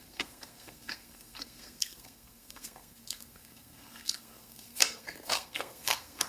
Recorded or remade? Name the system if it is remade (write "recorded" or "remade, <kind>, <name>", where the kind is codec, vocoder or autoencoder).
remade, codec, SNAC